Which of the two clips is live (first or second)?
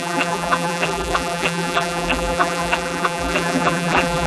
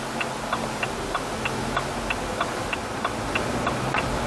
second